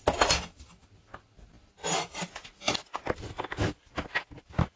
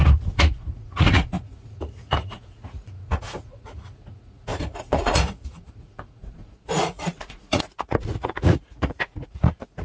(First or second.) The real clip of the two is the first